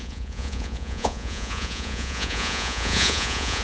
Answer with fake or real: fake